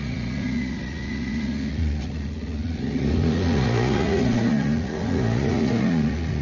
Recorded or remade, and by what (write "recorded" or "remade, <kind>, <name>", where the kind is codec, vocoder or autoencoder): remade, vocoder, Vocos